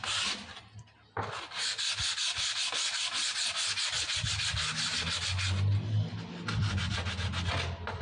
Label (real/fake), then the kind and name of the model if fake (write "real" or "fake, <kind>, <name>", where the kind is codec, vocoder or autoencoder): real